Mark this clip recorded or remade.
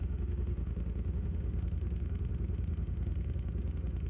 remade